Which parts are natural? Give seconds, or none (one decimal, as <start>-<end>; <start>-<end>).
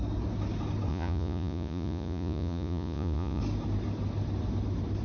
0.0-0.9; 3.4-5.0